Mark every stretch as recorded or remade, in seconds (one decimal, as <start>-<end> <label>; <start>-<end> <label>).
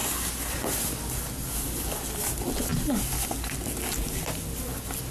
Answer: 0.0-0.8 remade; 0.8-2.7 recorded; 2.7-3.3 remade; 3.3-5.1 recorded